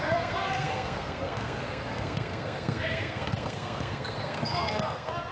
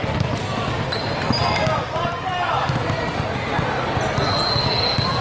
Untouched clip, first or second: second